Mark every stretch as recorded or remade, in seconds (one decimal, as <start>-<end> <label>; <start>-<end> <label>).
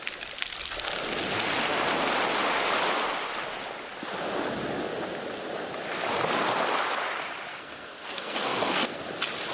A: 0.0-7.5 recorded; 7.5-9.0 remade; 9.0-9.5 recorded